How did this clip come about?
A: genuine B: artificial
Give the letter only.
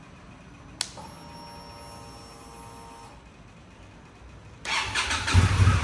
A